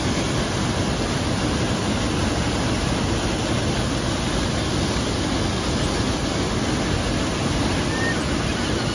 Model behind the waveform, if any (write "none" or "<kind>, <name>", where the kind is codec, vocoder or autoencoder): none